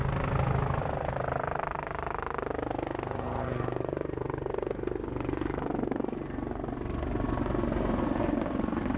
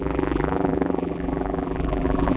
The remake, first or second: second